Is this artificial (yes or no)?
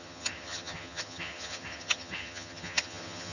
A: yes